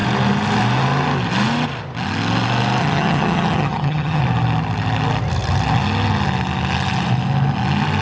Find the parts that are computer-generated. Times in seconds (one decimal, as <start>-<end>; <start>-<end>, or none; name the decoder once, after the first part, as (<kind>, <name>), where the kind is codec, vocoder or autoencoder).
2.8-4.2 (vocoder, HiFi-GAN)